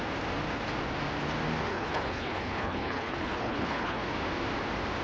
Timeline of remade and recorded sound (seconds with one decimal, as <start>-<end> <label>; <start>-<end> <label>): 0.0-1.7 recorded; 1.7-4.0 remade; 4.0-5.0 recorded